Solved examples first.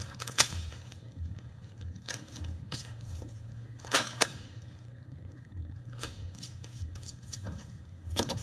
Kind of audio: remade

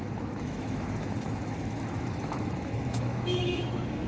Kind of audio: remade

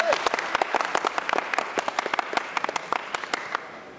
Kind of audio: recorded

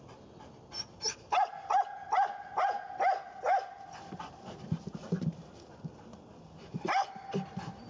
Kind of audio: recorded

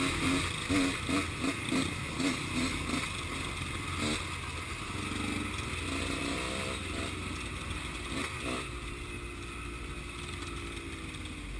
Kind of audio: recorded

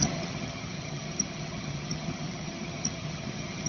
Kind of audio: remade